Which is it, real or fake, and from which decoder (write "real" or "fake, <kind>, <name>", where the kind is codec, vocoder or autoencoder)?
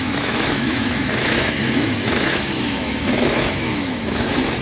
fake, autoencoder, DAC-VAE